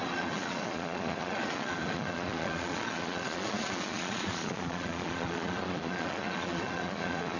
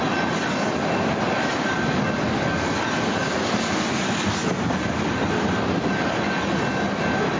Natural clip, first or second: second